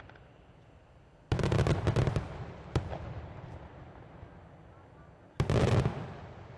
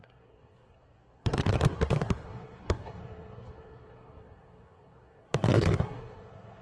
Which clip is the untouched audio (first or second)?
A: first